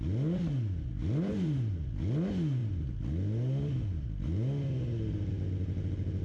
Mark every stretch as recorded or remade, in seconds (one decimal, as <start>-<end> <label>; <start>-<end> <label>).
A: 0.0-1.0 recorded; 1.0-1.7 remade; 1.7-6.2 recorded